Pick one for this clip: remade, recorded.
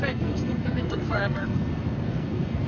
remade